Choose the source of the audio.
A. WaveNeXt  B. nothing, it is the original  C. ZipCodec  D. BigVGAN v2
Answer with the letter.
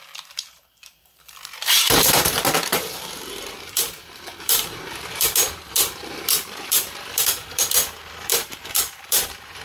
D